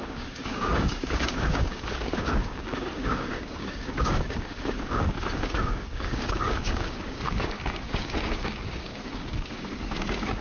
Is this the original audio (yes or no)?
no